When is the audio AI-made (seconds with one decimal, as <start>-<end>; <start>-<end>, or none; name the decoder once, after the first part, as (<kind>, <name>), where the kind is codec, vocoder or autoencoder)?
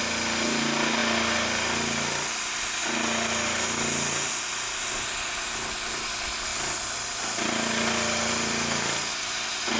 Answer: 6.5-9.2 (vocoder, BigVGAN v2)